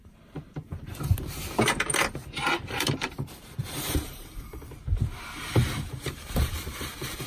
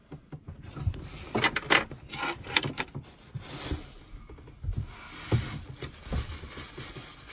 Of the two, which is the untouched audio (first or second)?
second